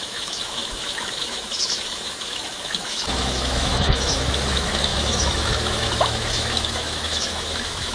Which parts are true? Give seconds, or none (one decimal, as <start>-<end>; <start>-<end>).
none